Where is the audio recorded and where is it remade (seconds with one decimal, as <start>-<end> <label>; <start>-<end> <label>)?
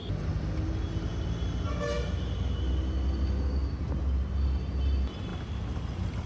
0.0-6.3 recorded